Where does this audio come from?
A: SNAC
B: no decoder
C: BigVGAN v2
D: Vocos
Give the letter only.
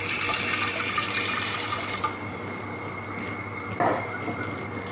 B